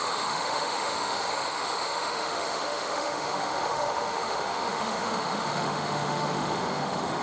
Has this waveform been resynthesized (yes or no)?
yes